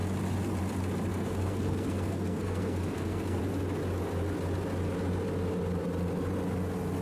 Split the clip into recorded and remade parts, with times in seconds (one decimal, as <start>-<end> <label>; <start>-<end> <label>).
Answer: 0.0-1.1 recorded; 1.1-3.4 remade; 3.4-7.0 recorded